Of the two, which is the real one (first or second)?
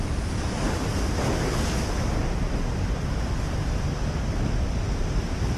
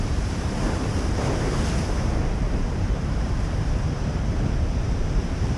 first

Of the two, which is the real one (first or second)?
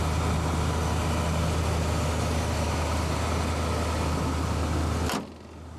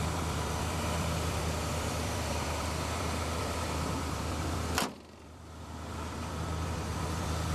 first